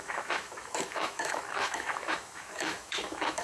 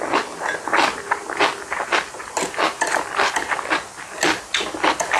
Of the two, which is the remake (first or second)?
first